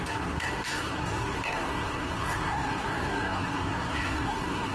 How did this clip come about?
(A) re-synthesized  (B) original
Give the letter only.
A